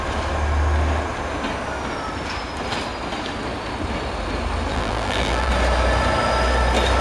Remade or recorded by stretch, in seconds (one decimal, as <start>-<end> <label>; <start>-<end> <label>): 0.0-4.7 recorded; 4.7-5.5 remade; 5.5-7.0 recorded